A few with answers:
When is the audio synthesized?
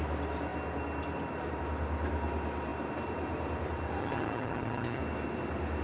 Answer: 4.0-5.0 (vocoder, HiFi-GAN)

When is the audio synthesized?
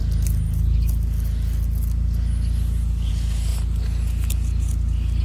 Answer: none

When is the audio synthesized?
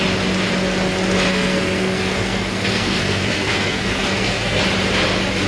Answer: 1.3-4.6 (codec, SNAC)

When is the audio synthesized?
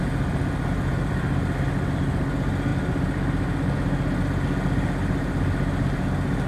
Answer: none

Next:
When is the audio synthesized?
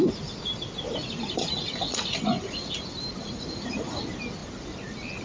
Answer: 1.0-2.6 (vocoder, Vocos); 3.2-4.0